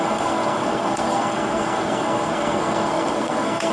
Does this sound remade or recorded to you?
remade